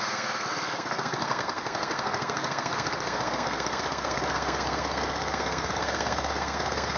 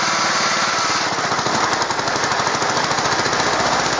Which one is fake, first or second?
first